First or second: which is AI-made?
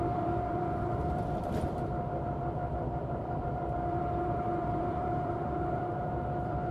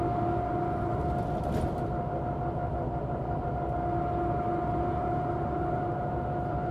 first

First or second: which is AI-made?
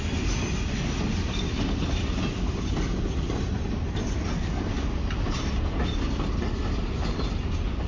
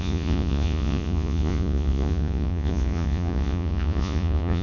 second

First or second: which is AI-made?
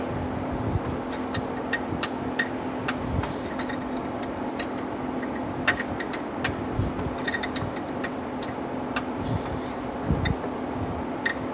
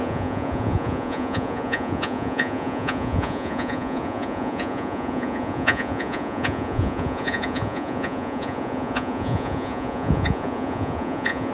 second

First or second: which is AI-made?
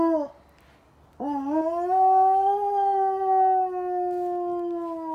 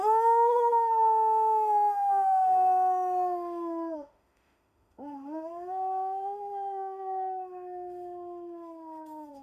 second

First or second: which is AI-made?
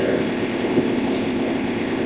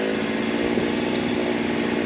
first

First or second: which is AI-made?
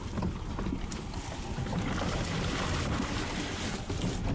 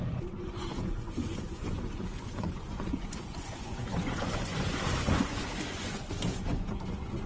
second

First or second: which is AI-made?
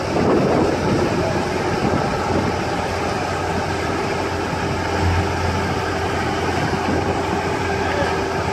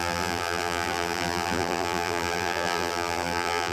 second